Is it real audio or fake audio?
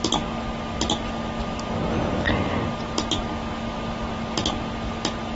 real